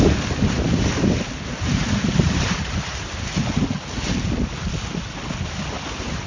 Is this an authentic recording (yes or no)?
yes